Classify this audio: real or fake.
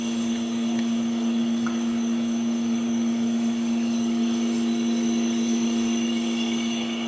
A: fake